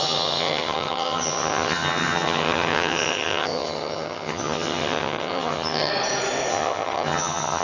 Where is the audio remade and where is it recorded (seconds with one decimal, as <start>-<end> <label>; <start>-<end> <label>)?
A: 0.0-5.9 remade; 5.9-6.5 recorded; 6.5-7.6 remade